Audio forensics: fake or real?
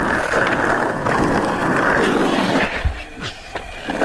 real